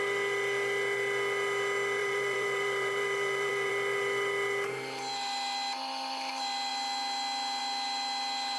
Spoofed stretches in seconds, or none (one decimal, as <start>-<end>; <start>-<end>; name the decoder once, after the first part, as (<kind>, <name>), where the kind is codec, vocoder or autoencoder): 2.0-3.7 (vocoder, BigVGAN v2)